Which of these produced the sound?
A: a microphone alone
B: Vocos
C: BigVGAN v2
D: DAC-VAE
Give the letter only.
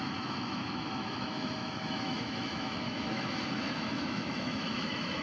D